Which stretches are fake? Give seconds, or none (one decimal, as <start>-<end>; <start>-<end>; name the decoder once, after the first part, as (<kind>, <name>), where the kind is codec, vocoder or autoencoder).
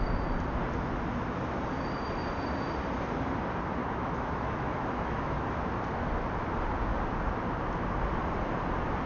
3.8-5.5 (autoencoder, DAC-VAE)